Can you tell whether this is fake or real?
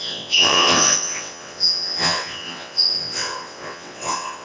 fake